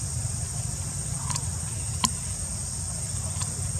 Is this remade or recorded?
recorded